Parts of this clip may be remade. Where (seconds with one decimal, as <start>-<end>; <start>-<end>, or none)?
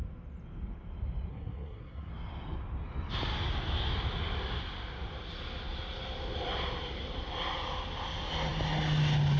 1.3-2.1